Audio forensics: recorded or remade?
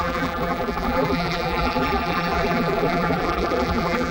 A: remade